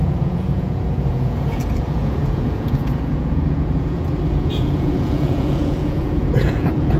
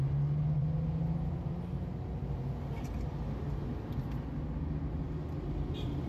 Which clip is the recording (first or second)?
second